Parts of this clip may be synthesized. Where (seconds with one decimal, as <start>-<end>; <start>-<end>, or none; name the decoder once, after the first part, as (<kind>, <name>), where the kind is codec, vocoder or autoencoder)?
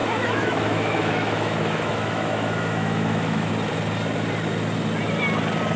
0.0-3.5 (autoencoder, DAC-VAE)